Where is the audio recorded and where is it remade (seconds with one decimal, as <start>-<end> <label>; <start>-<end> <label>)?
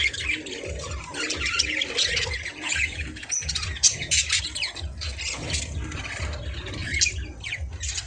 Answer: 0.0-2.5 recorded; 2.5-4.4 remade; 4.4-8.1 recorded